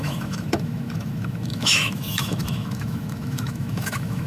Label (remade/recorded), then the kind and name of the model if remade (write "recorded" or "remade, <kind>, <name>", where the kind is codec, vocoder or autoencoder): remade, autoencoder, DAC-VAE